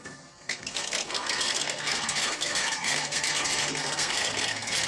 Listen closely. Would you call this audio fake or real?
fake